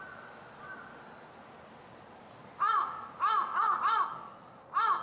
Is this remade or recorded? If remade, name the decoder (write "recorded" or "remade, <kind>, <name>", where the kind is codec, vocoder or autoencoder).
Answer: recorded